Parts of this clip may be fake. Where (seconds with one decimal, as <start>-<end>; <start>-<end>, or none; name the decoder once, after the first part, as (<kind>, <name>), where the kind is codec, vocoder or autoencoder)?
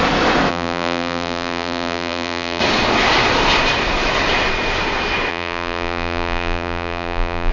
0.5-2.6 (vocoder, BigVGAN v2); 5.3-7.5